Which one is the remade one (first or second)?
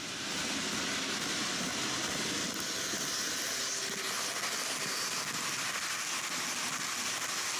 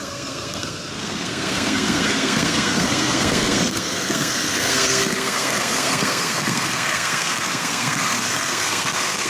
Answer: second